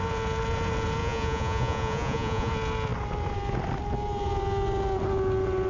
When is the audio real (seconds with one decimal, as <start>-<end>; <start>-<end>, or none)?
0.0-1.0; 2.5-5.7